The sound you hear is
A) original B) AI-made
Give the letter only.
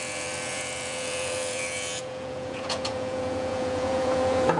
B